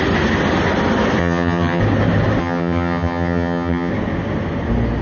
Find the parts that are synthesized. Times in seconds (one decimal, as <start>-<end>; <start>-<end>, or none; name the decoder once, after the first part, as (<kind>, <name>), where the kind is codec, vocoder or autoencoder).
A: 1.2-1.8 (vocoder, HiFi-GAN); 2.4-3.9